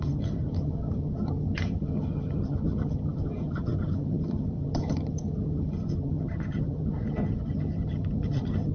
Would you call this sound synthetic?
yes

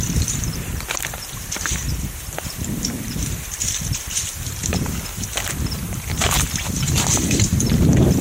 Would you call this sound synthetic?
yes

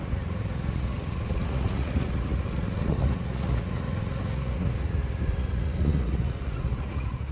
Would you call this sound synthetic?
yes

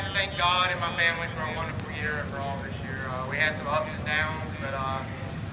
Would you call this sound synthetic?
no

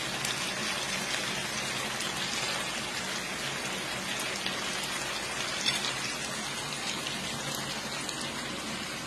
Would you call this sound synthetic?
no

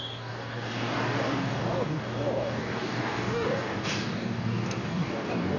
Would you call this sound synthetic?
yes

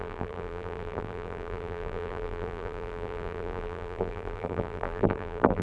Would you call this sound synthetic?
yes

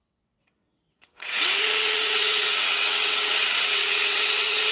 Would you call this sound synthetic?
yes